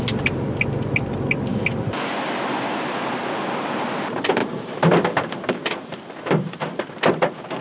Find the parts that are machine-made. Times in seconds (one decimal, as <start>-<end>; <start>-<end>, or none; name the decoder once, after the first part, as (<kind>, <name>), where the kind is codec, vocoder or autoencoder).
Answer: 4.4-6.9 (vocoder, BigVGAN v2)